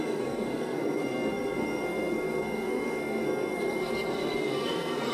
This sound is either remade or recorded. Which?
remade